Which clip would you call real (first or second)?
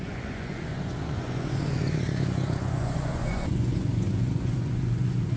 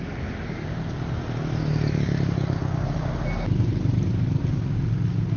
second